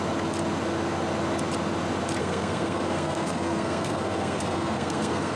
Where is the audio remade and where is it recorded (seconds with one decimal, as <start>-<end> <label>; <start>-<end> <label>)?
0.0-2.2 recorded; 2.2-5.4 remade